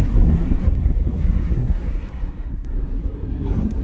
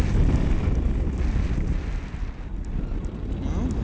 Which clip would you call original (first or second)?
second